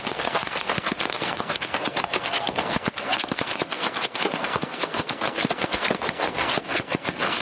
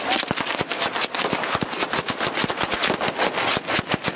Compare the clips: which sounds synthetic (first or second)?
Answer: first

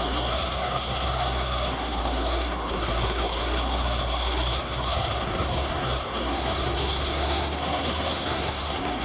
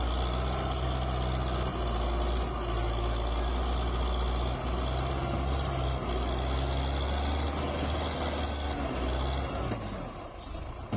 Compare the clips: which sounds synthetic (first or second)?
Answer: first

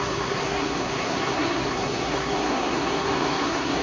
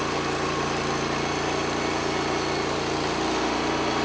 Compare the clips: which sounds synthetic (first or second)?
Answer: first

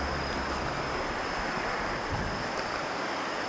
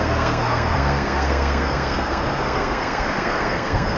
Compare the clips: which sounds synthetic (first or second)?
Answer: second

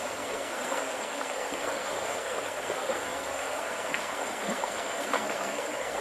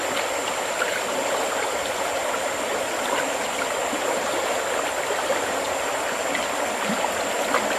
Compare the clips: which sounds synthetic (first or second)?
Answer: first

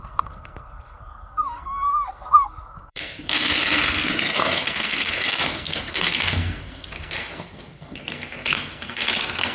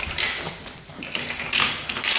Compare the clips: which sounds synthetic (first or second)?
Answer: first